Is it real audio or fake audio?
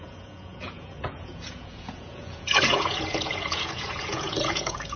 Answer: fake